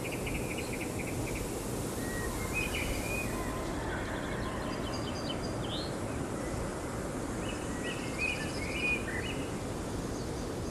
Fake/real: real